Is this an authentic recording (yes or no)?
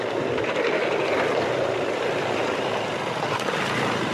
yes